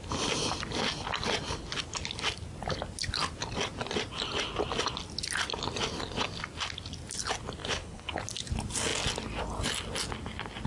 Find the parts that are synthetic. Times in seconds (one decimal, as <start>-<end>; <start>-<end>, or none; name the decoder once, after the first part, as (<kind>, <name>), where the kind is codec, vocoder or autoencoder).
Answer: 7.6-8.2 (codec, HILCodec)